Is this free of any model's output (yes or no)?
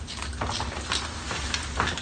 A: yes